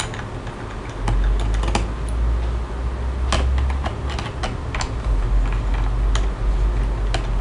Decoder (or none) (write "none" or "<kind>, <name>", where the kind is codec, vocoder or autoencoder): none